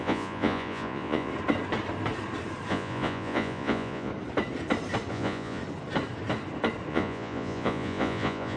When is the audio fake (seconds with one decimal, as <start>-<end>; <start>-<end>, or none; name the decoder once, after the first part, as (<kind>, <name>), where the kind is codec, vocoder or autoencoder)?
0.0-1.3 (vocoder, Vocos); 2.7-4.1; 5.1-5.6; 6.9-8.6